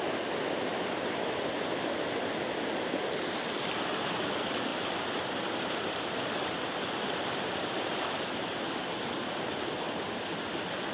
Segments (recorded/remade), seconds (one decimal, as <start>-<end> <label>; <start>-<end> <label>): 0.0-4.7 recorded; 4.7-9.9 remade; 9.9-10.9 recorded